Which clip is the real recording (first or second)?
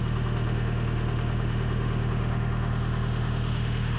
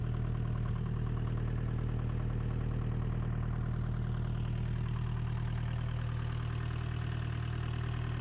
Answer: second